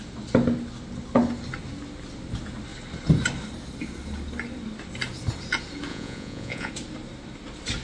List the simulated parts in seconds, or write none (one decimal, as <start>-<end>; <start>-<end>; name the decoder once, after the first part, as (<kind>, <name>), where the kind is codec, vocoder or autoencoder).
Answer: 5.9-6.7 (vocoder, Vocos)